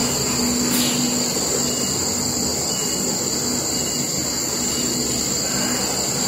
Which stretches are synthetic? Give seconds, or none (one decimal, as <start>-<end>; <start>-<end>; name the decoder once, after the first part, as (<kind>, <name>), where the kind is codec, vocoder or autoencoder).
none